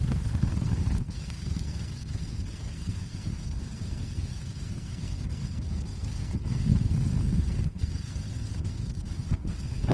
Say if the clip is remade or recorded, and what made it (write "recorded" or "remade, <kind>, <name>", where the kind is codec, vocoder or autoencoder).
remade, codec, SNAC